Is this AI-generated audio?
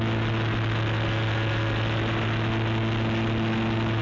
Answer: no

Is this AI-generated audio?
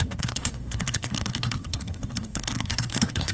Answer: yes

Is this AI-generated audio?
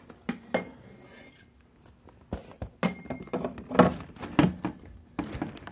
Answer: no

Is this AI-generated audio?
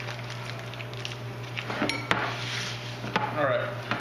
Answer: no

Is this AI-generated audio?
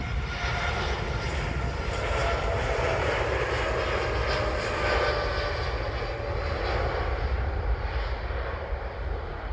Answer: no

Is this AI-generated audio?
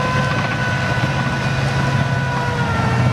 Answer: no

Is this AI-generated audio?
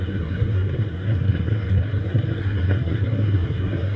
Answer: yes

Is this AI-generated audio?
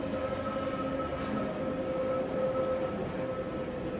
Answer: no